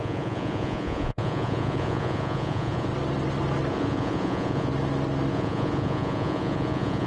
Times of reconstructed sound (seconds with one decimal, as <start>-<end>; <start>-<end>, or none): 0.0-2.9; 3.7-4.7; 5.3-7.1